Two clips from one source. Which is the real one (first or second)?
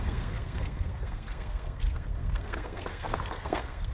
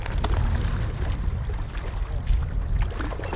second